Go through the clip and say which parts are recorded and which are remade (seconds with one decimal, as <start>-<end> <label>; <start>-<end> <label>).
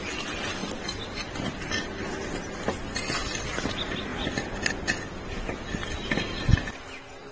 0.0-7.3 recorded